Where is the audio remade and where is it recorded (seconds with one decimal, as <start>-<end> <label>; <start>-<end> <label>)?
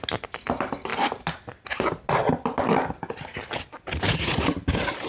0.0-5.1 recorded